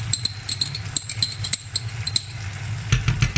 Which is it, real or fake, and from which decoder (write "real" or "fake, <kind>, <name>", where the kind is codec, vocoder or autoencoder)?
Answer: real